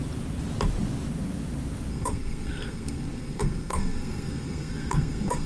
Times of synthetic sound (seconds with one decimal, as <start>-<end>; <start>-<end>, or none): 1.9-5.5